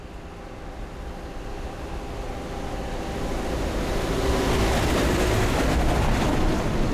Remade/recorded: recorded